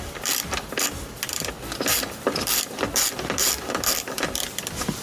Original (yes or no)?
no